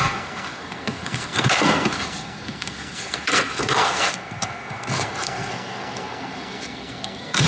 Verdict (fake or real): fake